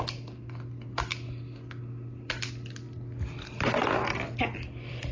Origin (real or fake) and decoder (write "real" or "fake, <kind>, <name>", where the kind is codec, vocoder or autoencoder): real